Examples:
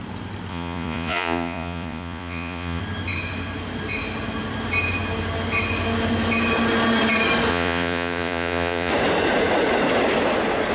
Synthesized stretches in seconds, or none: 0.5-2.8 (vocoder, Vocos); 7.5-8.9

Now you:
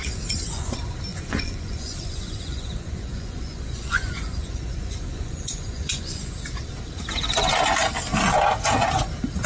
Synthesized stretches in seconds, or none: 0.0-0.7 (vocoder, Vocos); 1.1-6.3

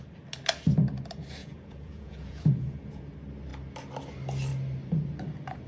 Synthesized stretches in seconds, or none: 1.4-3.1 (vocoder, Vocos)

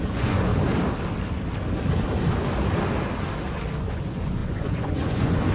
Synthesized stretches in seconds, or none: 0.0-0.5 (vocoder, Vocos); 3.8-5.5

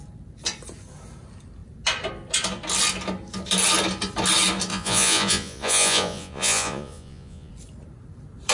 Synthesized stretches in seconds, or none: 4.7-7.5 (vocoder, Vocos)

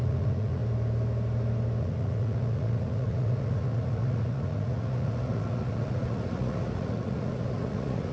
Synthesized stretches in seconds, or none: 0.0-0.6 (vocoder, Vocos); 1.8-8.1

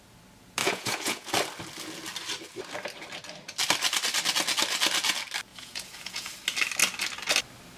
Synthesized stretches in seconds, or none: 0.6-1.3 (vocoder, Vocos); 5.5-6.3